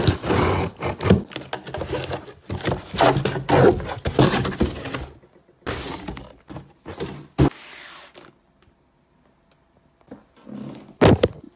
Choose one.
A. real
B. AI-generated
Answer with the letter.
A